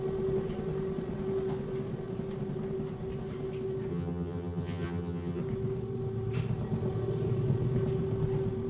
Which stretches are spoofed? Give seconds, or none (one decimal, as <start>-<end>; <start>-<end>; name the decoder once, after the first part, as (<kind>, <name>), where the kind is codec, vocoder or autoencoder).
3.9-5.4 (vocoder, HiFi-GAN)

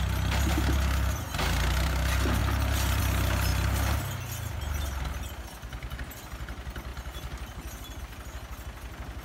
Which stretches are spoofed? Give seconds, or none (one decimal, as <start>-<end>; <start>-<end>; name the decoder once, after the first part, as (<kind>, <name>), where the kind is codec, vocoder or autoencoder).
none

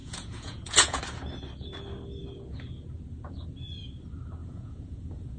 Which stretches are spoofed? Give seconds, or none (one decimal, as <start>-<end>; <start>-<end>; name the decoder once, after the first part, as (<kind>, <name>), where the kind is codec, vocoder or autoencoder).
0.0-1.0 (vocoder, Vocos); 4.4-5.4